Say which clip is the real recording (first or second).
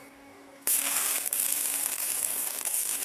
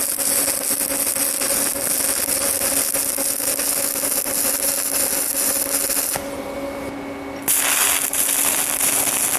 second